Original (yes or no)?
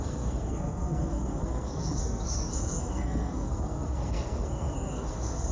no